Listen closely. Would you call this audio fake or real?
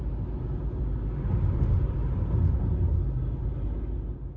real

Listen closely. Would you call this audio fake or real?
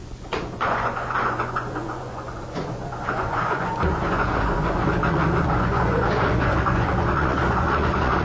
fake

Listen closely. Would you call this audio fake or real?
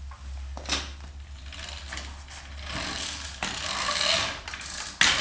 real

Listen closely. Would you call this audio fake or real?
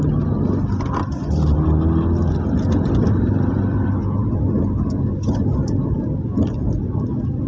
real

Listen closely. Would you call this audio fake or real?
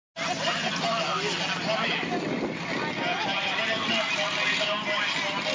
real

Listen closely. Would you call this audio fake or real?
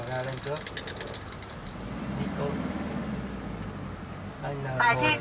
real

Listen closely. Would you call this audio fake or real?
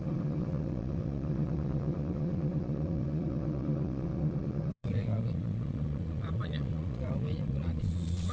fake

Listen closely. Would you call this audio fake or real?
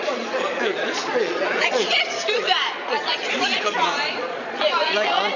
fake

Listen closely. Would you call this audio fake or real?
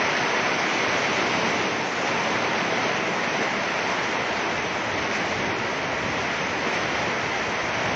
real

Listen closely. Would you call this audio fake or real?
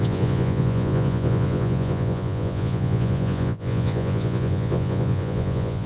fake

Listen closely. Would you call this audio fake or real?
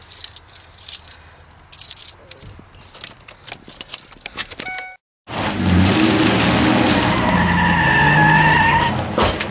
real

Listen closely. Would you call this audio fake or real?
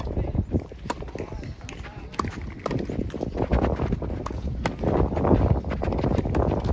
real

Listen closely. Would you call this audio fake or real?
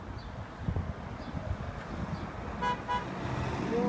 real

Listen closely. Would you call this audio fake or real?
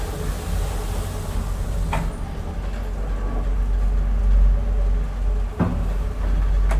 real